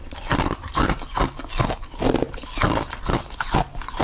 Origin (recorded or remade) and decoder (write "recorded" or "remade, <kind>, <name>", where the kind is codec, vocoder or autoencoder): recorded